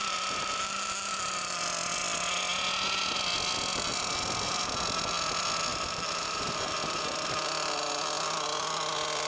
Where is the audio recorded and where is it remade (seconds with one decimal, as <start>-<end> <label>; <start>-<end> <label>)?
0.0-1.6 remade; 1.6-5.7 recorded; 5.7-7.3 remade; 7.3-9.3 recorded